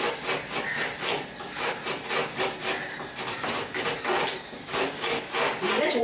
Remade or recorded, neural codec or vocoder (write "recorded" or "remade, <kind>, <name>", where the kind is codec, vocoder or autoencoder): recorded